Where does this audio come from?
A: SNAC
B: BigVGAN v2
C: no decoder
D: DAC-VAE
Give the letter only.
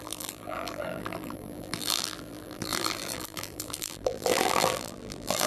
B